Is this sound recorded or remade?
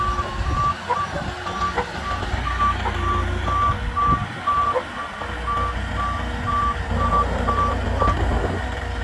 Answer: recorded